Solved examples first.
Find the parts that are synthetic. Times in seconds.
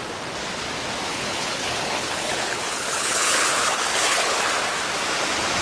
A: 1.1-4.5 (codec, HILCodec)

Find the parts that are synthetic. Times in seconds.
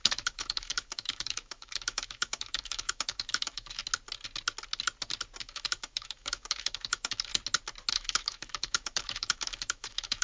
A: 0.0-3.8 (autoencoder, DAC-VAE); 5.4-7.3; 7.9-10.2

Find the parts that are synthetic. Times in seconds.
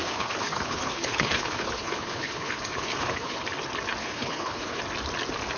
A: 0.0-3.4 (codec, HILCodec); 4.0-4.8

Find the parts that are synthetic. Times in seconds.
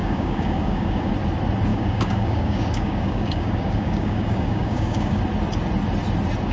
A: 0.0-1.1 (codec, DAC); 1.7-5.2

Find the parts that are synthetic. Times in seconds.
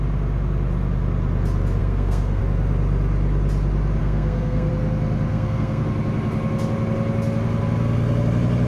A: 1.8-2.4 (codec, SNAC); 4.0-4.7; 5.3-5.8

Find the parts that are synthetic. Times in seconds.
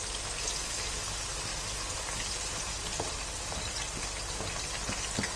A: none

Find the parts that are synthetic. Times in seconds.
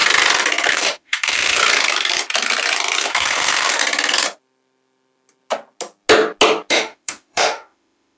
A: 0.7-1.6 (autoencoder, DAC-VAE); 3.0-3.8; 6.7-8.2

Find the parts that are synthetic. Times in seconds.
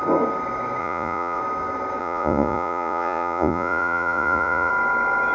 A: 0.8-1.4 (vocoder, Vocos); 2.0-4.7